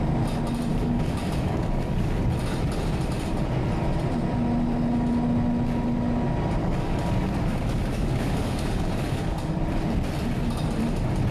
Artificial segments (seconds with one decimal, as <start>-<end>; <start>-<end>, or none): 0.7-2.2; 6.6-9.5